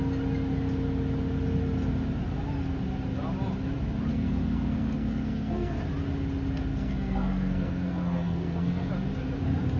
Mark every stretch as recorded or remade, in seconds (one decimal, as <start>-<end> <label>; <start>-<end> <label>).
0.0-4.1 recorded; 4.1-5.8 remade; 5.8-6.7 recorded; 6.7-8.9 remade; 8.9-9.8 recorded